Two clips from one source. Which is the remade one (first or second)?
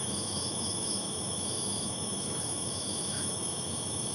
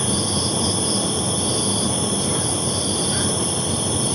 first